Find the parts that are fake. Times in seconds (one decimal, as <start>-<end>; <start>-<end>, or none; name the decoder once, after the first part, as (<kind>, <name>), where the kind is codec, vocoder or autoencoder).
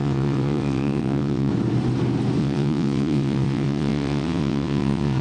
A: 0.0-1.5 (vocoder, WaveNeXt); 2.4-5.2